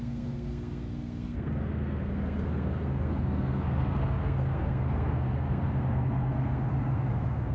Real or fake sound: fake